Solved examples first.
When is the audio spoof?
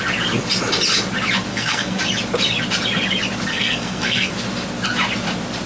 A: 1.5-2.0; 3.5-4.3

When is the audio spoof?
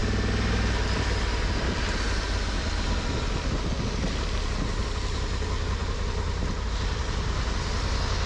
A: none